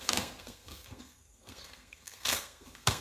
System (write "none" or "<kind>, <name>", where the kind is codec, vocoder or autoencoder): codec, SNAC